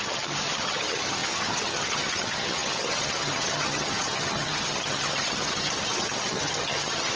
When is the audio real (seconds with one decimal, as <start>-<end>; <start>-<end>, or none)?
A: none